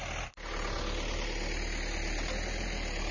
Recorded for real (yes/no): yes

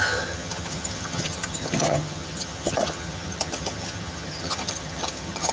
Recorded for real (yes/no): no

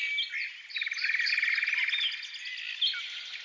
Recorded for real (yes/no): yes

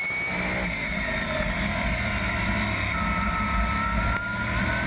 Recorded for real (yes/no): yes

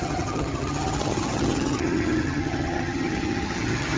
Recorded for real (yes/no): no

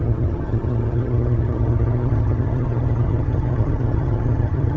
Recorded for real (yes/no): no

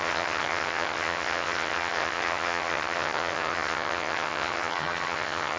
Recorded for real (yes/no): no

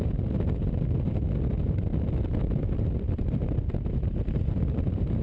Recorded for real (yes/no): yes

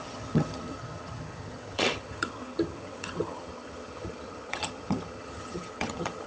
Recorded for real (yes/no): no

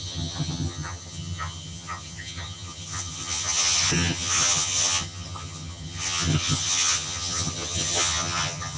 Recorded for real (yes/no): no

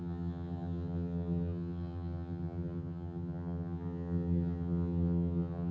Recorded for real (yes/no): no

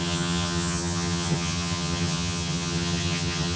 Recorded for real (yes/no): no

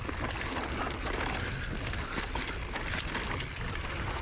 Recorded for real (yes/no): yes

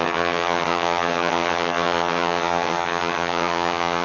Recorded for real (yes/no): no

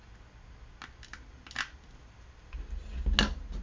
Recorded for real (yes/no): yes